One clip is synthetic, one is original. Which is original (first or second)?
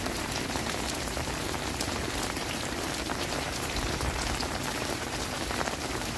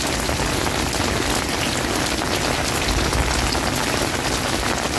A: second